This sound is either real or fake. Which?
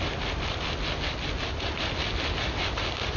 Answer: real